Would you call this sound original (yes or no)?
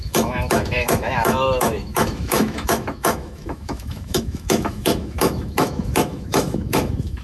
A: no